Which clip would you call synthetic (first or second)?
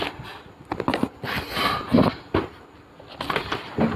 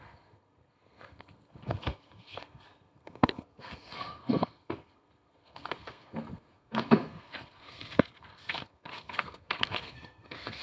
second